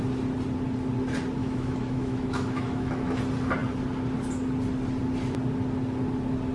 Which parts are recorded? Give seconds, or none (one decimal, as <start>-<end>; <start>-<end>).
0.0-1.4; 3.2-6.5